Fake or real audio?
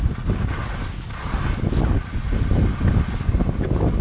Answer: real